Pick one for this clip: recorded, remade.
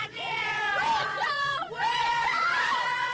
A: remade